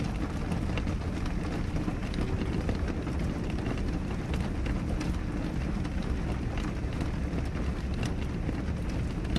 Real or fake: real